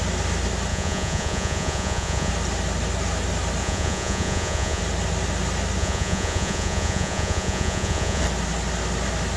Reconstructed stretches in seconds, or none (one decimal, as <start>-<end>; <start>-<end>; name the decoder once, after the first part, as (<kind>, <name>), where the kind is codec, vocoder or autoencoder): 0.7-2.3 (vocoder, Vocos); 3.6-4.8; 5.8-8.2